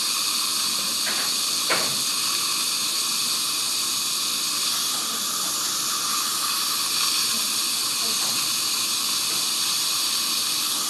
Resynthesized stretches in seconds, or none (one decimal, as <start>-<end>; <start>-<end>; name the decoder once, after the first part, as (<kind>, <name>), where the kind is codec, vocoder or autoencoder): none